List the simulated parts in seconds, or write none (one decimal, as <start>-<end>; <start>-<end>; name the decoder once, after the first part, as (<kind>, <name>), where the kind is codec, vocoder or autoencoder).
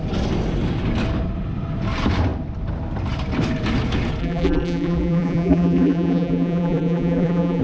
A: 4.2-7.6 (vocoder, BigVGAN v2)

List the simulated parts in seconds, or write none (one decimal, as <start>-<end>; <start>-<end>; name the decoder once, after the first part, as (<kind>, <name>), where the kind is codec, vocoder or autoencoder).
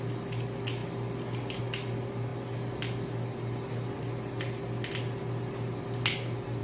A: none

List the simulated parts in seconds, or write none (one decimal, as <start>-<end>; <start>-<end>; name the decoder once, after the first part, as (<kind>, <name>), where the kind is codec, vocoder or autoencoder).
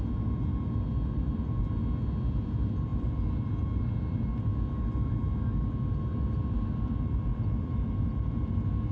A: 0.5-1.6 (vocoder, BigVGAN v2); 2.9-3.8; 7.3-8.3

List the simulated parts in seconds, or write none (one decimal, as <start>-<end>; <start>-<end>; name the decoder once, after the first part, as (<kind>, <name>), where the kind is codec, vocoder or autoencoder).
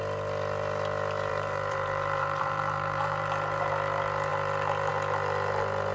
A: 1.3-3.7 (vocoder, BigVGAN v2)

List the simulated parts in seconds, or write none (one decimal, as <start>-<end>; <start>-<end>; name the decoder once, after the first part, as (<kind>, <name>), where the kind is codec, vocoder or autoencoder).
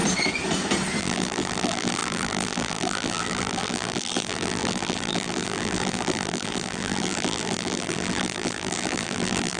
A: 1.0-9.6 (vocoder, BigVGAN v2)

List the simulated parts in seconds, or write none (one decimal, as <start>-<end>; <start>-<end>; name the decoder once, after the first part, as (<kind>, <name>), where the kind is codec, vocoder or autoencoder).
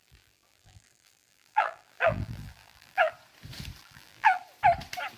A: 0.0-3.1 (vocoder, BigVGAN v2); 3.8-4.4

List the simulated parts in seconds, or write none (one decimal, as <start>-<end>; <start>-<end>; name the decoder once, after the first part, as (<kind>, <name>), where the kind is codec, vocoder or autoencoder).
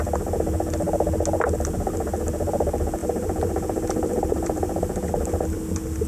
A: 3.0-5.1 (vocoder, BigVGAN v2)